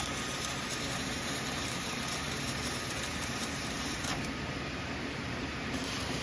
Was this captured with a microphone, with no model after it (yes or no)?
no